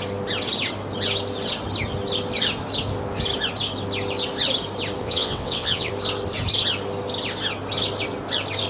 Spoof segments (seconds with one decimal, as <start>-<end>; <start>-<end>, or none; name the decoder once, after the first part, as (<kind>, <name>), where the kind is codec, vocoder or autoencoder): 5.0-5.9 (vocoder, WaveNeXt)